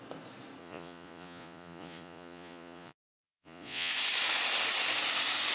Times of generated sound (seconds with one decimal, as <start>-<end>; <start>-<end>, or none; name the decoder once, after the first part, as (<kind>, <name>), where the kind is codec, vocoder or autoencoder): 0.6-3.9 (vocoder, Vocos)